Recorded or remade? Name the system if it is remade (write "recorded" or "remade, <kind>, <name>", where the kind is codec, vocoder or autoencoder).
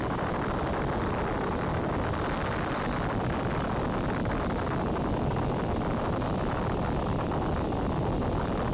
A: recorded